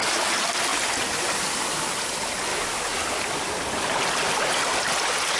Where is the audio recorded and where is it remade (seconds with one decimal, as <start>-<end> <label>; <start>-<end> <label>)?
0.0-5.4 recorded